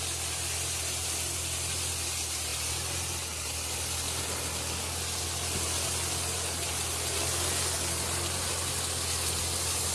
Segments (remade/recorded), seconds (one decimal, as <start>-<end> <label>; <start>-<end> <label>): 0.0-9.9 recorded